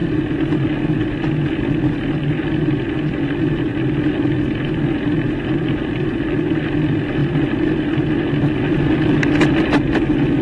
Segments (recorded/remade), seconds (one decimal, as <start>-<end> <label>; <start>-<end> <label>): 0.0-10.4 recorded